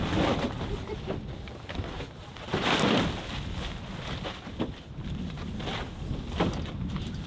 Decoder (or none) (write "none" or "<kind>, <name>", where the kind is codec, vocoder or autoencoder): none